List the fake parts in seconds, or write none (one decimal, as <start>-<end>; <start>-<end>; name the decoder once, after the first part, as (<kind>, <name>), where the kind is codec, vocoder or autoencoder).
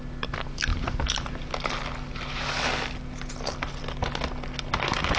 none